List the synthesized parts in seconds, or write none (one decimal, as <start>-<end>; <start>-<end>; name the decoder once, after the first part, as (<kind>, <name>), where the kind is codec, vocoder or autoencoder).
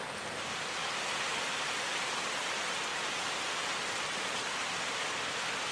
none